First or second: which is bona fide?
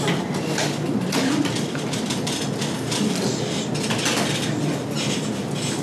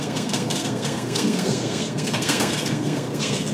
first